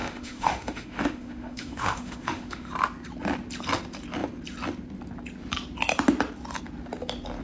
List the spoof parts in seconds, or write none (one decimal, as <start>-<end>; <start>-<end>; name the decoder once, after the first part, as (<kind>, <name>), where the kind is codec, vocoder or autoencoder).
0.0-2.7 (autoencoder, DAC-VAE)